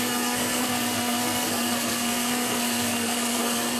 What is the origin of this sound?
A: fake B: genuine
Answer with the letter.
A